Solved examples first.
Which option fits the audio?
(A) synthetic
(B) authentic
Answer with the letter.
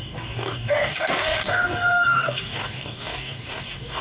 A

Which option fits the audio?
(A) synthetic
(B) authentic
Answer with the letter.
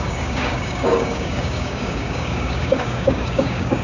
A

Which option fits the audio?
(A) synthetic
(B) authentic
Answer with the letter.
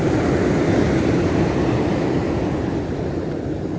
B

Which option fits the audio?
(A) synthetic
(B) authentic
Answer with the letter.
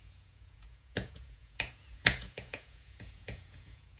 A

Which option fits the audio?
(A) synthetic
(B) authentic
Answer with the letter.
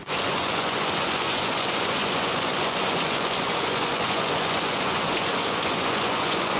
A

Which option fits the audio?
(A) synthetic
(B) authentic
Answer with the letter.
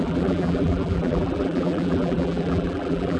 A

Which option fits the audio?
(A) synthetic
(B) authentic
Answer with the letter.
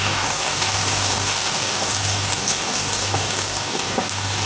A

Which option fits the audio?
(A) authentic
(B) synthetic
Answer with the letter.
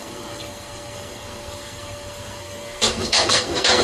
B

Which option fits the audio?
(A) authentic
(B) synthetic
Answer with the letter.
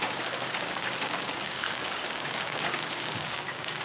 B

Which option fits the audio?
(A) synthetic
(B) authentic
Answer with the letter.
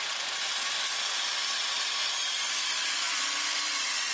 A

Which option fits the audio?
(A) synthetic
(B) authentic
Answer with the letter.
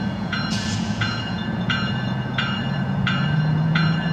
A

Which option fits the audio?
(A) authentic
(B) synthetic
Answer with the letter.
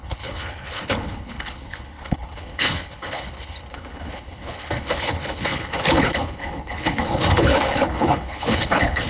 B